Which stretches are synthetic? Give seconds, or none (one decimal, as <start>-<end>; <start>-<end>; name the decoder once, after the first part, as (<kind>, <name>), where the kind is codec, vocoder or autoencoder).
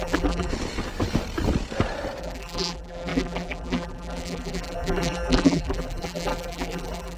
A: 0.0-0.5 (vocoder, BigVGAN v2); 2.2-7.2